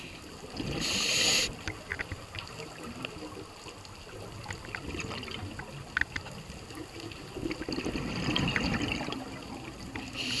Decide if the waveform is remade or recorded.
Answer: recorded